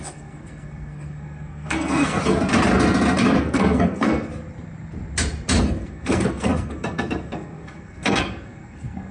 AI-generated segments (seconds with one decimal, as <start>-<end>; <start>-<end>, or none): 0.0-2.2; 3.4-4.3; 5.6-9.1